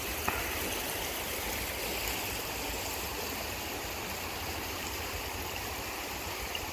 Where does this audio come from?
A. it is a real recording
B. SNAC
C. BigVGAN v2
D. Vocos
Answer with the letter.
A